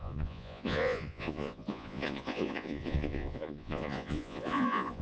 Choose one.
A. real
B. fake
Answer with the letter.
B